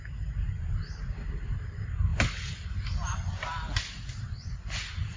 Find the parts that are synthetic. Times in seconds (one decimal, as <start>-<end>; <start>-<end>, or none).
none